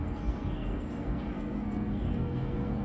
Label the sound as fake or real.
fake